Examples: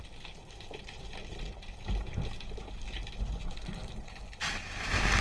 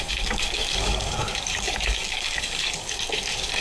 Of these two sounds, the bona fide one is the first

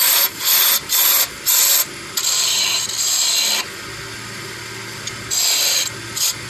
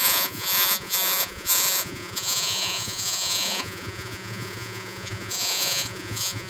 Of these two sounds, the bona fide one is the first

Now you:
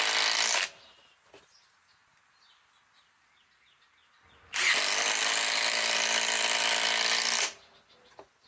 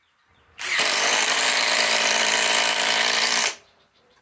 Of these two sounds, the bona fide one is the first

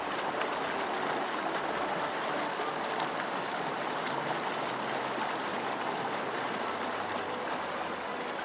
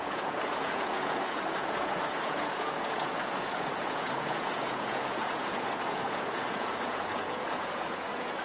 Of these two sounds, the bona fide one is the first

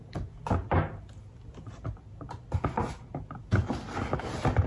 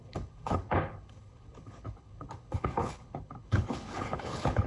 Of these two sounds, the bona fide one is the first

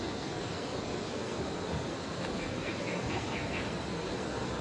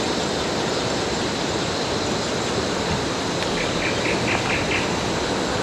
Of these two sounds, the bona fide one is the second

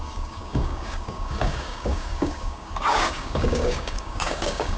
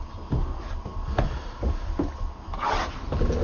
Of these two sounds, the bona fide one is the second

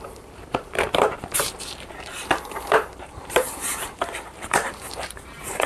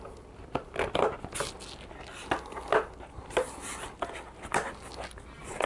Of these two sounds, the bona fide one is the second